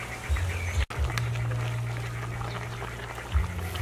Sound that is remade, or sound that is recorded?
recorded